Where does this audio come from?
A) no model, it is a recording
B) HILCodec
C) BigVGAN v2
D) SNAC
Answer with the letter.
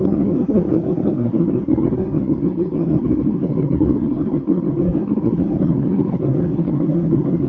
D